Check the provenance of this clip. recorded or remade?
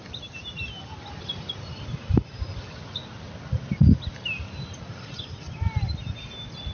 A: recorded